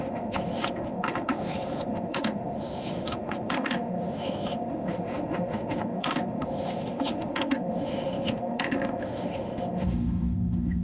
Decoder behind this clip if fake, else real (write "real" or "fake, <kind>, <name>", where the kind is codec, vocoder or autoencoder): fake, autoencoder, DAC-VAE